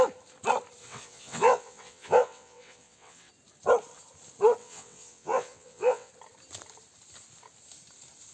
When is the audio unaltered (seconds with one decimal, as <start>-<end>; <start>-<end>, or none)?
0.0-0.8; 3.3-4.6; 6.1-8.3